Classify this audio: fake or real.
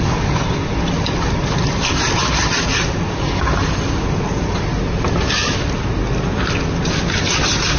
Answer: real